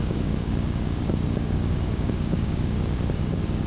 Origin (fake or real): fake